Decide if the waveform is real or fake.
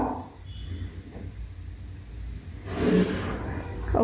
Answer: real